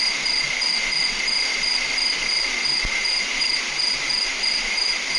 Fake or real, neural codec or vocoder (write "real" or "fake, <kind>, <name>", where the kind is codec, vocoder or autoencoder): real